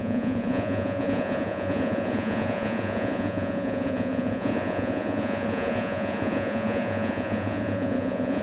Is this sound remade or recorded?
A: remade